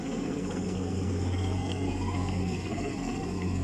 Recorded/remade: remade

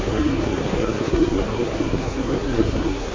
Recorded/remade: remade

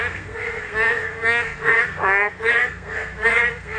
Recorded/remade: remade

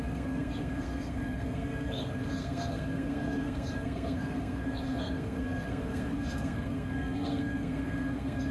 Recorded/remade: remade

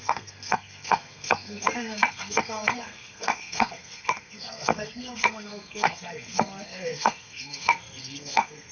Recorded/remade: remade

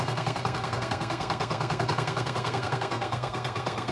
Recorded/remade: remade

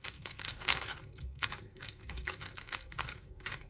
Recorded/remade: remade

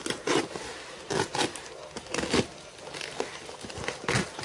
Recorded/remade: recorded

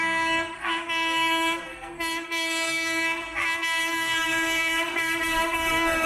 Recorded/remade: remade